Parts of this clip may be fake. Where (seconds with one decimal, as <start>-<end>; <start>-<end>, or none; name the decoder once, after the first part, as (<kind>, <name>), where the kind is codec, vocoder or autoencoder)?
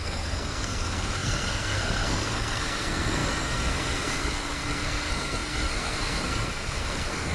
0.0-7.3 (codec, SNAC)